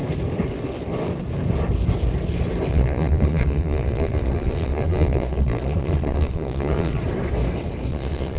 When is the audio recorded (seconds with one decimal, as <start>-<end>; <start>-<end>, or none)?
0.0-2.7; 7.0-7.9